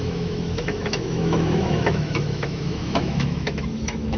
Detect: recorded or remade remade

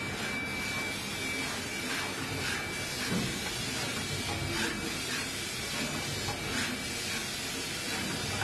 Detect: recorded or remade recorded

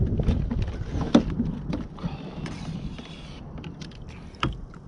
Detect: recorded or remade recorded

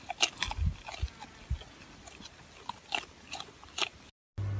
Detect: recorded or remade recorded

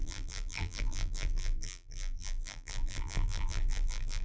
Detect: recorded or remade remade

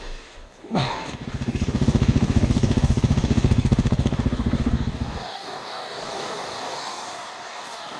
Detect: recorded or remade remade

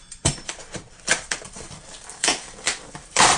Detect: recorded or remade remade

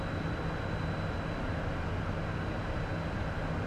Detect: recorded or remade recorded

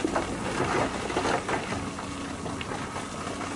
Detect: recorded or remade recorded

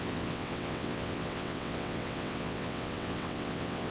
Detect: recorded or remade remade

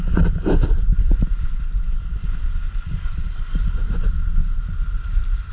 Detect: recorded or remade recorded